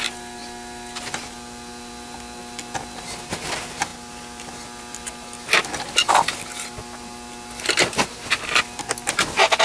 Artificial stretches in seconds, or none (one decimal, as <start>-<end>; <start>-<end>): none